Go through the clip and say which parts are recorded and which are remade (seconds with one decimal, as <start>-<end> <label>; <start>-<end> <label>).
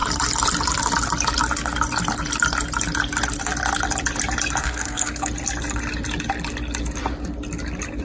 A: 0.0-4.6 recorded; 4.6-5.3 remade; 5.3-8.0 recorded